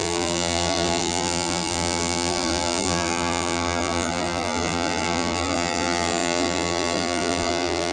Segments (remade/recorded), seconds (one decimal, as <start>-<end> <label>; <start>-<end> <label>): 0.0-7.9 remade